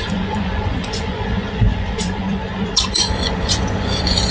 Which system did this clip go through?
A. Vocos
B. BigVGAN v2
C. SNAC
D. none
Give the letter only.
A